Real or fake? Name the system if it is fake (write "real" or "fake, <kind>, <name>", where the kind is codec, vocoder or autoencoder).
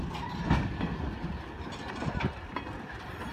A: real